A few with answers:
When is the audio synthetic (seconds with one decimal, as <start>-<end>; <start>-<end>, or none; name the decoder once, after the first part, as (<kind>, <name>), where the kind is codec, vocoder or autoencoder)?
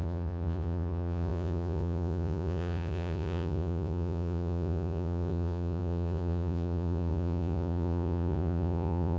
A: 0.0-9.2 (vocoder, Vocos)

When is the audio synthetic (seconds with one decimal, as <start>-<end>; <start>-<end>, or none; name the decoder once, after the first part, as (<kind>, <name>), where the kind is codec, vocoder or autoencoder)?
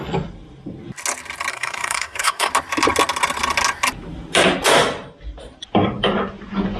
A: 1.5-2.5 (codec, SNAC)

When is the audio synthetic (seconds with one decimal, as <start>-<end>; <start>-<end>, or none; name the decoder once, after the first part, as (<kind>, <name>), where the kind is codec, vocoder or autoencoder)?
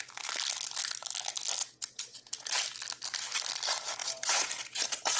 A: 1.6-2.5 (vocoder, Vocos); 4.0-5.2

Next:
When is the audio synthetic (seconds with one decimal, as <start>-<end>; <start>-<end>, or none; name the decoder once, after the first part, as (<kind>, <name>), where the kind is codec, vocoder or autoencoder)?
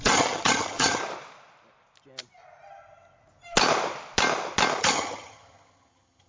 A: 0.0-1.0 (vocoder, HiFi-GAN); 4.8-6.3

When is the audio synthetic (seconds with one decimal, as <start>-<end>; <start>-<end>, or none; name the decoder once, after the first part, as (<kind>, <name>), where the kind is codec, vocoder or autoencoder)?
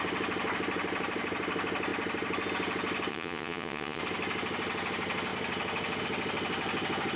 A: 3.1-4.0 (vocoder, Vocos)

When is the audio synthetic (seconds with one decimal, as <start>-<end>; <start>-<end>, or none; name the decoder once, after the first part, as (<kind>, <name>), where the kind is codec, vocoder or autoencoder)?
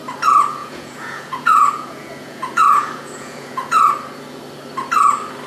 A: 0.6-3.9 (vocoder, Vocos)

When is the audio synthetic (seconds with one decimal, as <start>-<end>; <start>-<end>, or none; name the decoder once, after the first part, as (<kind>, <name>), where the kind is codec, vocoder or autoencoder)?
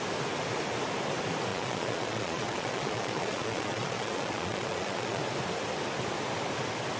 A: 1.5-5.2 (vocoder, Vocos)